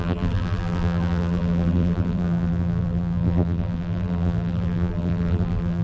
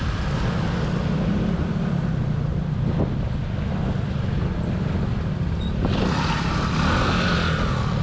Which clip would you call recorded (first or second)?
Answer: second